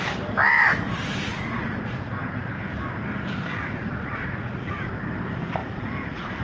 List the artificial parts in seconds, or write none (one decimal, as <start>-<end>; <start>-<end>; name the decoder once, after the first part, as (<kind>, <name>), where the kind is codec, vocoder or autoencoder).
1.3-2.1 (vocoder, Vocos); 3.8-4.9; 5.6-6.4